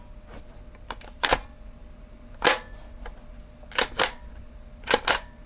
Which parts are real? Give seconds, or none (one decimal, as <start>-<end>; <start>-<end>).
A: 0.0-5.5